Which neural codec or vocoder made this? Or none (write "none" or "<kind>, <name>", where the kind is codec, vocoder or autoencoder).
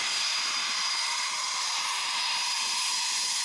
none